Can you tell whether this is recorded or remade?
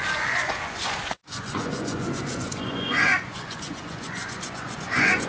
remade